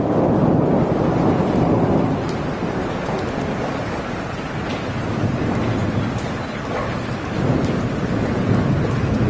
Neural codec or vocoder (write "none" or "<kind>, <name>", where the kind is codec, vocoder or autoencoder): vocoder, BigVGAN v2